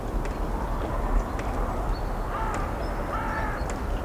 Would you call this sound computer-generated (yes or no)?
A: no